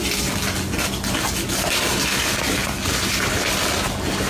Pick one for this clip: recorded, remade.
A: recorded